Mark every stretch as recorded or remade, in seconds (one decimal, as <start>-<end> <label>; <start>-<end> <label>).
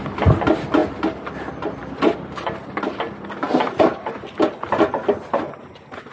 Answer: 0.0-6.1 recorded